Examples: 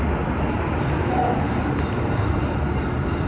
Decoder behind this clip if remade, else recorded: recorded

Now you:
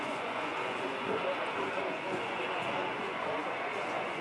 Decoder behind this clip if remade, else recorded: remade, vocoder, Vocos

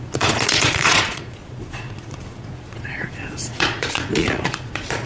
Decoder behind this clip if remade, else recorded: remade, vocoder, Vocos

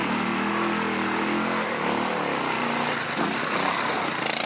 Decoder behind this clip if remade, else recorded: recorded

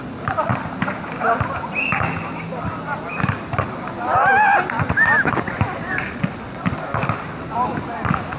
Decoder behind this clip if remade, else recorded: recorded